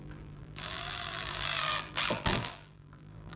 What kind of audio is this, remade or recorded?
remade